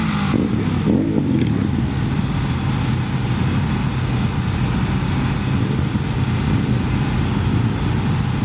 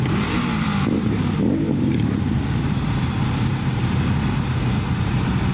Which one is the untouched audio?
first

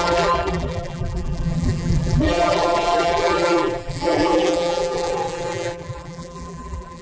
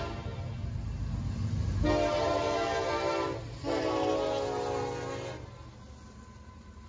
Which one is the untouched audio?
second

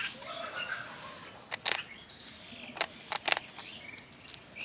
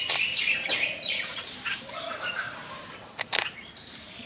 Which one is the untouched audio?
first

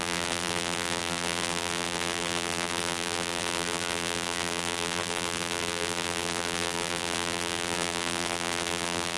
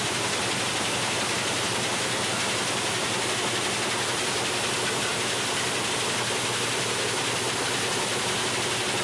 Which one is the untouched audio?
second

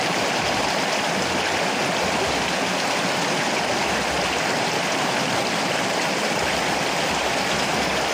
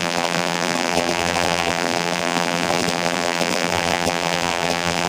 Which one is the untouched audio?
first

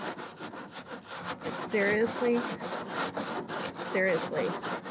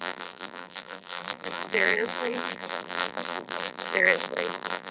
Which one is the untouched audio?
first